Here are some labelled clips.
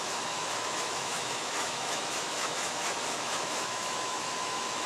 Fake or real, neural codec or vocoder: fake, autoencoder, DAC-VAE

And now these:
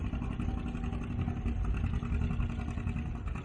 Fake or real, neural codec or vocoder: real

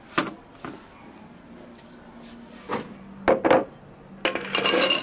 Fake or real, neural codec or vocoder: real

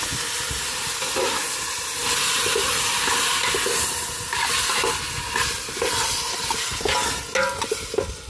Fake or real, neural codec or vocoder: real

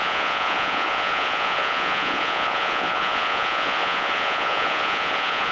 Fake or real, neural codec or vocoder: fake, vocoder, Vocos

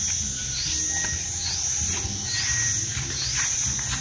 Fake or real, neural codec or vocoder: real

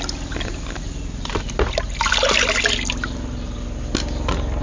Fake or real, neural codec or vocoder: real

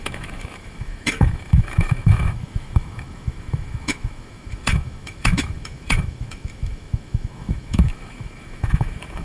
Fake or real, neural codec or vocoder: fake, autoencoder, DAC-VAE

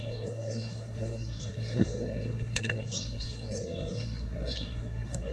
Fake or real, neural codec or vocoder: fake, codec, SNAC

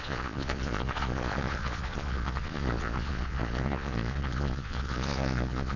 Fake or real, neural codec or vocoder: fake, vocoder, Vocos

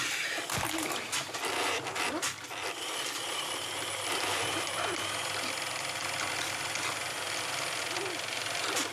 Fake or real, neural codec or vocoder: fake, vocoder, BigVGAN v2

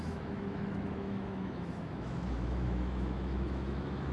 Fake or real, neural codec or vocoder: fake, autoencoder, DAC-VAE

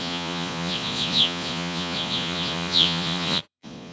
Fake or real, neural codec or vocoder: fake, vocoder, Vocos